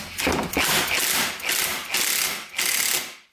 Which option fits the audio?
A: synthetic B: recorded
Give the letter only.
B